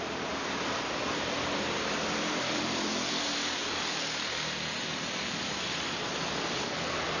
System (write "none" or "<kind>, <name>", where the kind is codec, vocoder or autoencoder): vocoder, BigVGAN v2